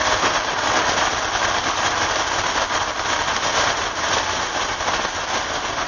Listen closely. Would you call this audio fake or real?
real